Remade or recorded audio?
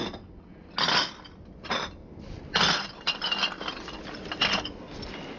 recorded